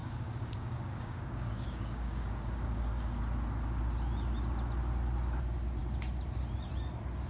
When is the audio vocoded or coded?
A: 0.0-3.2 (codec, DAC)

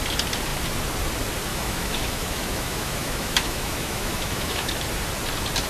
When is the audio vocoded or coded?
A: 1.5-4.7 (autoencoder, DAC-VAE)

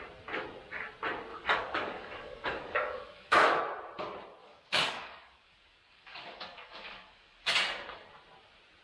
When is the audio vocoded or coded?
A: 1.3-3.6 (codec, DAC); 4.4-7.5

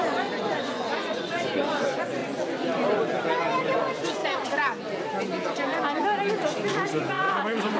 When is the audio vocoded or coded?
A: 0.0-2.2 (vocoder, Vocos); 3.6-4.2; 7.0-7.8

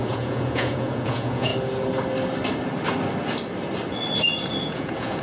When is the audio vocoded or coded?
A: 0.0-1.5 (vocoder, Vocos); 4.6-5.2

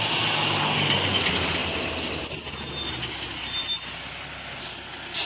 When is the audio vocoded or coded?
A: none

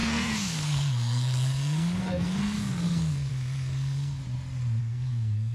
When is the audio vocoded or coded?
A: 0.0-4.2 (codec, SNAC); 4.8-5.5